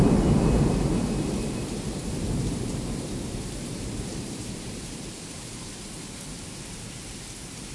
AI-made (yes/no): yes